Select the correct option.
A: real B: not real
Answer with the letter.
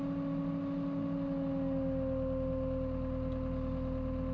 A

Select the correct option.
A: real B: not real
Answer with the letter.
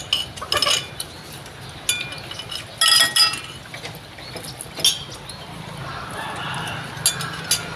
A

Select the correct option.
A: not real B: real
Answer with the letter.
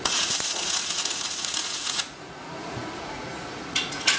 A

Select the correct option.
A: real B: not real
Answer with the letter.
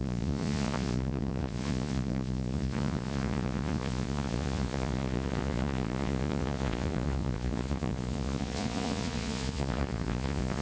B